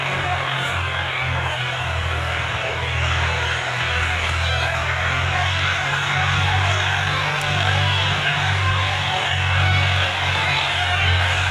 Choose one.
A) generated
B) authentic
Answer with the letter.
A